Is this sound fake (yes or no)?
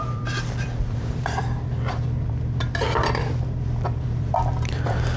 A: yes